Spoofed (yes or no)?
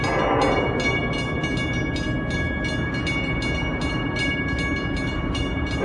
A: no